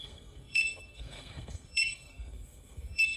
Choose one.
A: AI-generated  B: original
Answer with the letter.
A